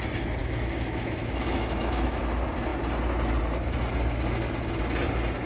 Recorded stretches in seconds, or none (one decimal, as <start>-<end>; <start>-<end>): 0.0-0.4; 2.2-5.5